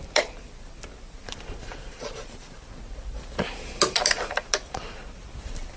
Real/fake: fake